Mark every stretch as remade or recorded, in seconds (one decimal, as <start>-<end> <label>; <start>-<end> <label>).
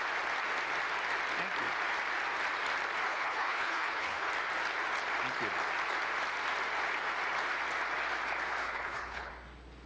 0.0-3.1 recorded; 3.1-4.3 remade; 4.3-8.6 recorded; 8.6-9.3 remade; 9.3-9.9 recorded